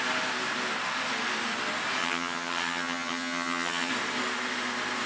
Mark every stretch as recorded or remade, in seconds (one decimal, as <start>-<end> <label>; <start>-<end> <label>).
0.0-2.0 recorded; 2.0-3.9 remade; 3.9-5.1 recorded